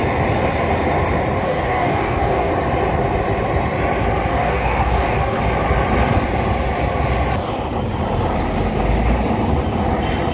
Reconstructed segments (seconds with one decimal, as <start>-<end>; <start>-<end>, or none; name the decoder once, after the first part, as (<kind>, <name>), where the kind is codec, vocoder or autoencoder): 1.4-2.5 (codec, DAC); 4.3-5.4